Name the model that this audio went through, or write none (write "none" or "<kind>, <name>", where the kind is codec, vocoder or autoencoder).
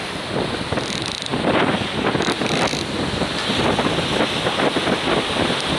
none